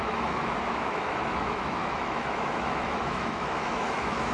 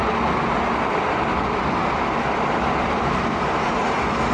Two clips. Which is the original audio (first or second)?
second